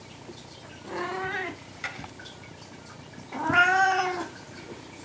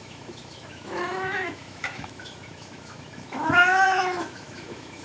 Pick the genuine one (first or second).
first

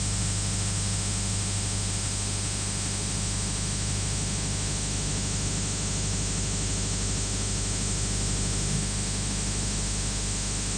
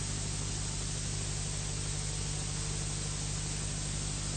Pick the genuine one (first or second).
second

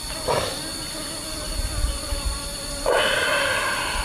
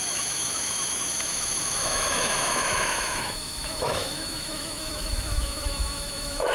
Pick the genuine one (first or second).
first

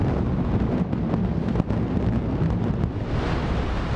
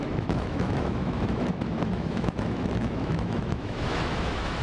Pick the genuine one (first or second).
first